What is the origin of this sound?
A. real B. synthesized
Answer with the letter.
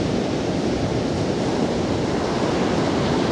A